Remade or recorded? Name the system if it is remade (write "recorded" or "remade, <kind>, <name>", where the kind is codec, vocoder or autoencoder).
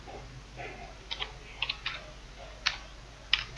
recorded